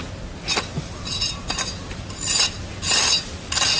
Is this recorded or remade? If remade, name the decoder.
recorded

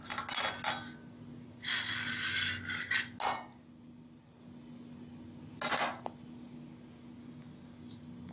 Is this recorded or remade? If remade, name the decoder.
recorded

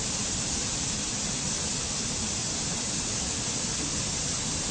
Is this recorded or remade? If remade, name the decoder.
recorded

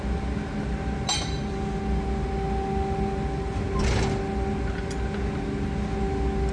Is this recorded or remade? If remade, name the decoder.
recorded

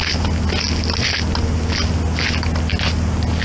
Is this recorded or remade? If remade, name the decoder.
recorded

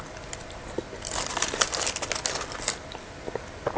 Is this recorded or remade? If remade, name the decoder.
recorded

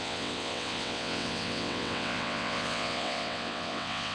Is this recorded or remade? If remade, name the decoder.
remade, vocoder, WaveNeXt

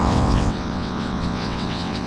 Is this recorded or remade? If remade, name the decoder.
remade, vocoder, WaveNeXt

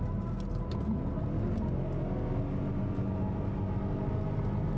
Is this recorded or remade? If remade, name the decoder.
recorded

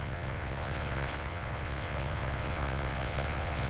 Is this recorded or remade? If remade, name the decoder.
remade, vocoder, WaveNeXt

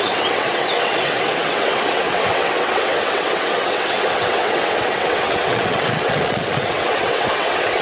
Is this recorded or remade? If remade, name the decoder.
remade, vocoder, WaveNeXt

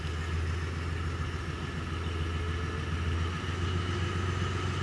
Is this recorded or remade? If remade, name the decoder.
recorded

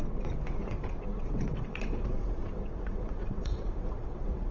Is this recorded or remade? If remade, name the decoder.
remade, vocoder, WaveNeXt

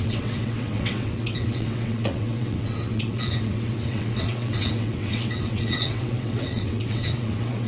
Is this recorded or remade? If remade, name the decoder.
remade, vocoder, WaveNeXt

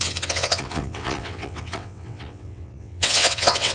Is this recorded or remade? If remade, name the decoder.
remade, vocoder, WaveNeXt